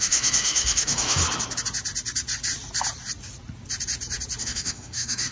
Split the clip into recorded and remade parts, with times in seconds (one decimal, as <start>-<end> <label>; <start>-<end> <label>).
0.0-1.2 remade; 1.2-4.4 recorded; 4.4-5.3 remade